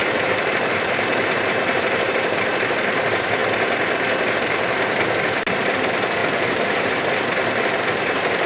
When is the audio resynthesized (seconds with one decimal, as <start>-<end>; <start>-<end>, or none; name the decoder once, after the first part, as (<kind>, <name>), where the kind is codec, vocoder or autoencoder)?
0.0-2.4 (vocoder, BigVGAN v2); 6.2-6.9